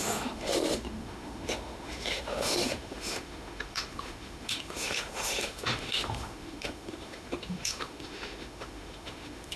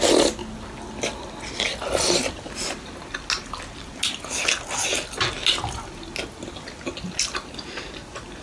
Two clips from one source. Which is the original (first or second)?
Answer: second